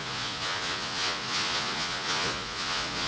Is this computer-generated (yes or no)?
yes